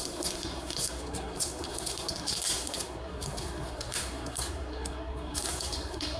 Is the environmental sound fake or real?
fake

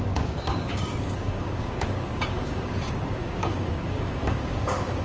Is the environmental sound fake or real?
fake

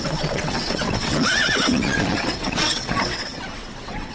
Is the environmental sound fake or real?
fake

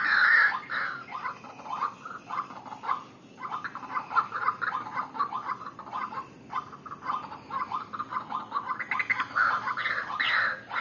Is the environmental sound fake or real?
real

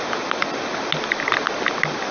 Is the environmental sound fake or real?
real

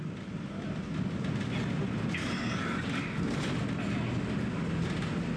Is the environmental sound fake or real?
real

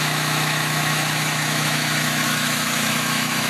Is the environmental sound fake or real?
fake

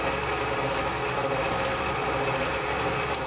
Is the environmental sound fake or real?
real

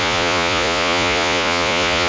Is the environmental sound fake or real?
fake